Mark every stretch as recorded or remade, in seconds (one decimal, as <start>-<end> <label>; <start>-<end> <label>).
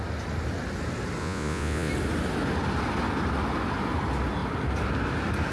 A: 0.0-1.2 recorded; 1.2-1.9 remade; 1.9-5.5 recorded